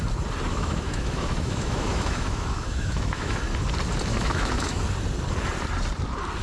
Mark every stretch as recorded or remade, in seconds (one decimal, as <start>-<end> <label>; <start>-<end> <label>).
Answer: 0.0-0.5 recorded; 0.5-3.4 remade; 3.4-4.1 recorded; 4.1-4.8 remade; 4.8-6.4 recorded